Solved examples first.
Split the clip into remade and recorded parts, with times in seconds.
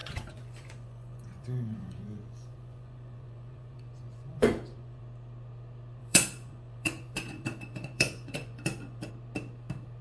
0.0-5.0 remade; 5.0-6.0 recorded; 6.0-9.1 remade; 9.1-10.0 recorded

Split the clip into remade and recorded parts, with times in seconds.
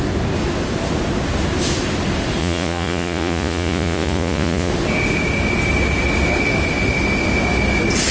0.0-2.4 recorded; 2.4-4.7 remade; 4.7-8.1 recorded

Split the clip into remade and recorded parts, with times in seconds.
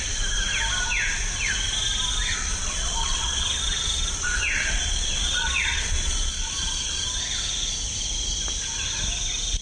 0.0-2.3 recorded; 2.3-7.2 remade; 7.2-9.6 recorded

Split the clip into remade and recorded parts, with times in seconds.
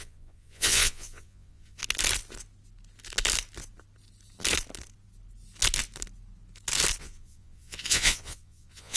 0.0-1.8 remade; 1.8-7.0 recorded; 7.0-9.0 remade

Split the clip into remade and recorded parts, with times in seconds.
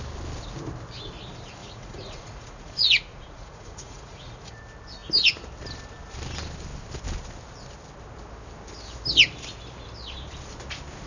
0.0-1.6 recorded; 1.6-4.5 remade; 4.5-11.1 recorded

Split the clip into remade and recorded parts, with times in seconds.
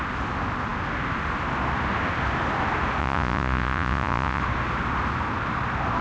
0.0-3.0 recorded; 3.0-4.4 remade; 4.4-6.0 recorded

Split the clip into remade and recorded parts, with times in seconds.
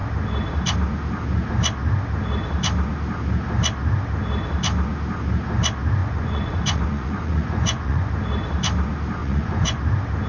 0.0-6.0 recorded; 6.0-8.1 remade; 8.1-9.2 recorded; 9.2-9.8 remade; 9.8-10.3 recorded